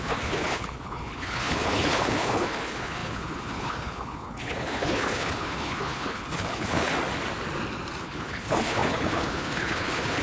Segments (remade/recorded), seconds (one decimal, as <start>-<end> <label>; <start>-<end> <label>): 0.0-6.9 remade; 6.9-8.0 recorded; 8.0-10.2 remade

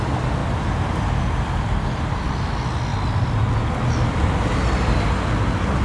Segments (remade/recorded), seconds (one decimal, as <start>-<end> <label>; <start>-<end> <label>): 0.0-5.8 recorded